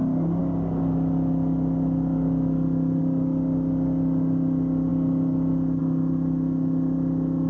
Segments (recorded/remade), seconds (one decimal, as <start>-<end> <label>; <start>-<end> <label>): 0.0-7.5 recorded